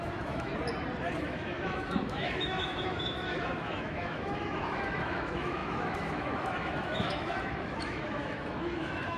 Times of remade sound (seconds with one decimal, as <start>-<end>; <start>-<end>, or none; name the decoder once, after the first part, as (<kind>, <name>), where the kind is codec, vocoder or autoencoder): 0.0-0.5 (autoencoder, DAC-VAE); 1.2-9.2